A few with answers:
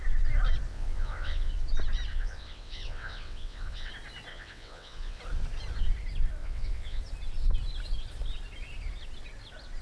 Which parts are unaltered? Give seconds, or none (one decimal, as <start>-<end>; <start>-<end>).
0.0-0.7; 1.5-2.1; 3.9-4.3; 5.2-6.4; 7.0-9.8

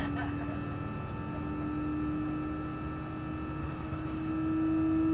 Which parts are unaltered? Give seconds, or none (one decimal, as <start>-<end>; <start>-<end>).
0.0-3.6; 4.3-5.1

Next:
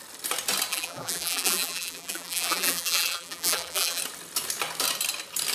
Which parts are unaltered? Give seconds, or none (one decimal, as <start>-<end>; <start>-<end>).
0.0-0.7; 4.0-5.5